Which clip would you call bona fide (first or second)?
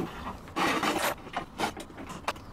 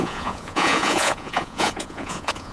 first